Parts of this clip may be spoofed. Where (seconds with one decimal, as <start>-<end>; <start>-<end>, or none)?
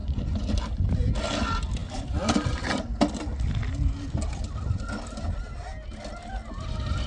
none